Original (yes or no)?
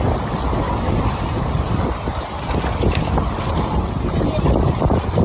yes